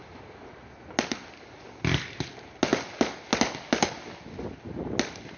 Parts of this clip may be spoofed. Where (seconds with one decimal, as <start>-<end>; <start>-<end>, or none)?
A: none